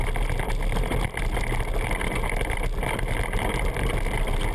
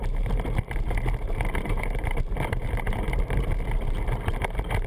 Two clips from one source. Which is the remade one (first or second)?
second